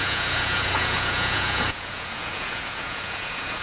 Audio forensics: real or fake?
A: fake